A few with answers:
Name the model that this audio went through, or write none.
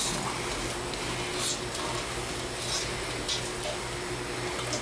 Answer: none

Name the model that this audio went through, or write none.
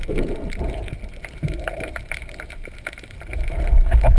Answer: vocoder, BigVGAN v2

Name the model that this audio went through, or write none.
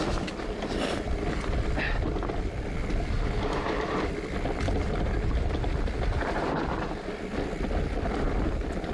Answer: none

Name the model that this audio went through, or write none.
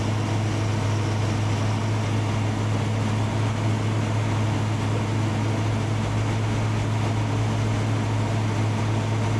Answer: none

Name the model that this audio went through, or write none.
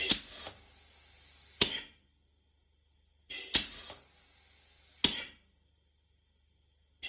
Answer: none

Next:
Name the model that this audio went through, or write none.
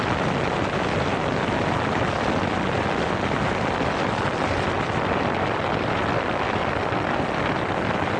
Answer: none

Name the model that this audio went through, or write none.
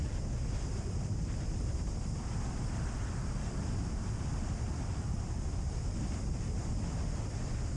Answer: vocoder, BigVGAN v2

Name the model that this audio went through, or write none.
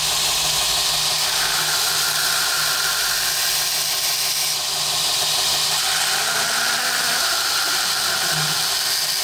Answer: none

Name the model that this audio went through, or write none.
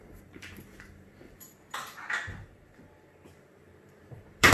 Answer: vocoder, BigVGAN v2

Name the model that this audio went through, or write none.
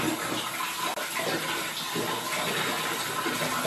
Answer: none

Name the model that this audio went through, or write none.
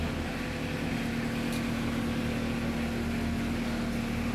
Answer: none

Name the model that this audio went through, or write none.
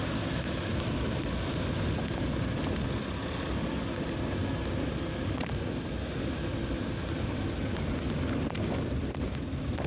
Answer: none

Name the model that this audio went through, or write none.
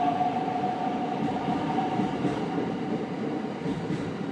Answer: vocoder, BigVGAN v2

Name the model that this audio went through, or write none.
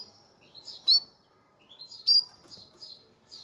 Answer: none